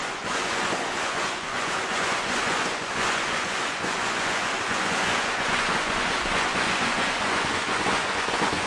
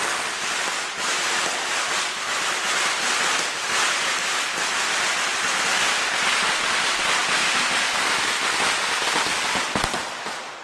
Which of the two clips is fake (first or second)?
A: first